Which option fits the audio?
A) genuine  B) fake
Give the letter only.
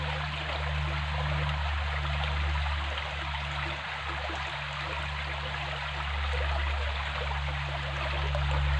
A